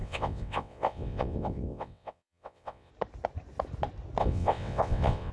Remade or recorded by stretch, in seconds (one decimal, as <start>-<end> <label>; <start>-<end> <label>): 0.0-2.9 remade; 2.9-4.2 recorded; 4.2-5.3 remade